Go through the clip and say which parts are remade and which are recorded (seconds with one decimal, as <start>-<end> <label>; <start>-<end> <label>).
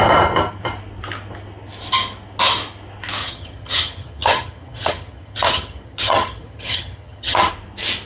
0.0-3.2 recorded; 3.2-7.5 remade; 7.5-8.1 recorded